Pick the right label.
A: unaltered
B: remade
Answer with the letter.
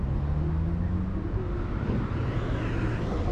A